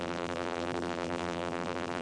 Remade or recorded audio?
remade